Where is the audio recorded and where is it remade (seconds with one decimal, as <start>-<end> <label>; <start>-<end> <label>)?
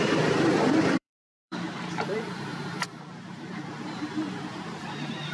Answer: 0.0-5.3 remade